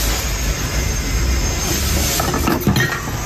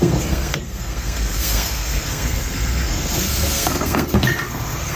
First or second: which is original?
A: first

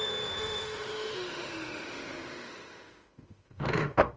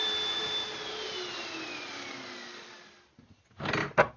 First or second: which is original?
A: second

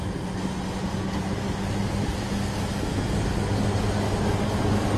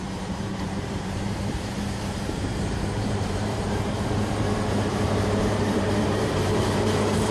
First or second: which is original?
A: first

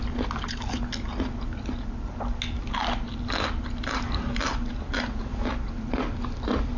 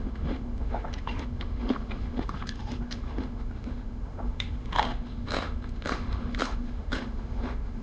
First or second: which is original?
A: first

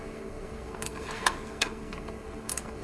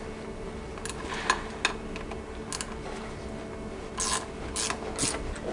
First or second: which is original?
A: second